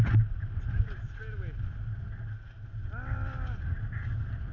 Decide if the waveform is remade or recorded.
recorded